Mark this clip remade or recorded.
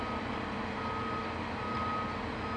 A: recorded